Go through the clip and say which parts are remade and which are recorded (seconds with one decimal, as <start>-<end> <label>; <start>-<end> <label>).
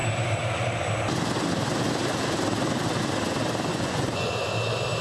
0.0-3.7 recorded; 3.7-4.3 remade; 4.3-5.0 recorded